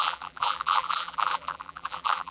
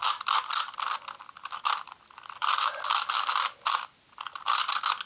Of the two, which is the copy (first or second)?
first